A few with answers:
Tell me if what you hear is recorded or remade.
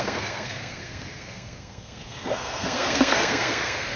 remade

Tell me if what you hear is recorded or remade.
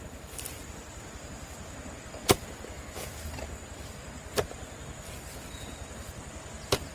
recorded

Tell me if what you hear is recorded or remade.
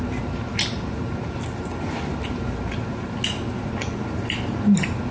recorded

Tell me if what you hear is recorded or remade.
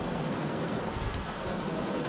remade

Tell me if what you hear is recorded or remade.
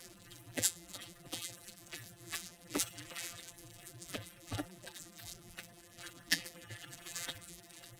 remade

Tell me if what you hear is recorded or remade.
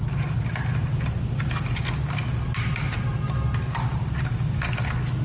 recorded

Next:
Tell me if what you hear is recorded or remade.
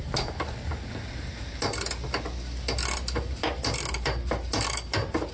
recorded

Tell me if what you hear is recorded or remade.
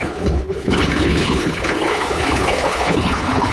remade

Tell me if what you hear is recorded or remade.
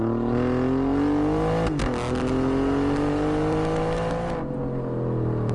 recorded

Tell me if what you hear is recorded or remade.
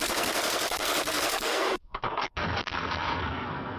remade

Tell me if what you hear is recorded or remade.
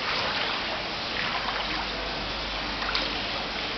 recorded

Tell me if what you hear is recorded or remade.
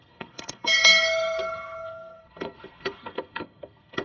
remade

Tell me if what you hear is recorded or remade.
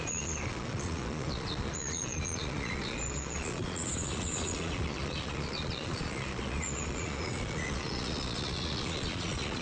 remade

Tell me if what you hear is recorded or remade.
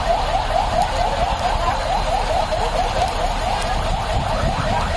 recorded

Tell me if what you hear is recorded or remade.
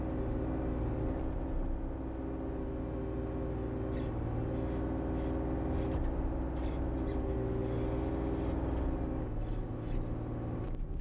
recorded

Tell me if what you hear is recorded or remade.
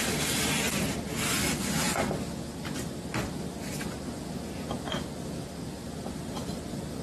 recorded